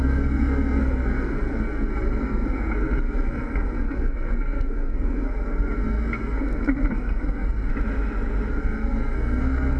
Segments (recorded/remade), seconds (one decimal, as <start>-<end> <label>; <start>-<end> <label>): 0.0-7.7 remade; 7.7-8.5 recorded; 8.5-9.8 remade